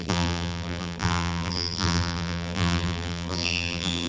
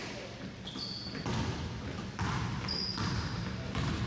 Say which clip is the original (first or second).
second